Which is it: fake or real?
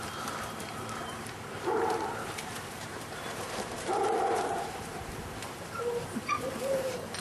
fake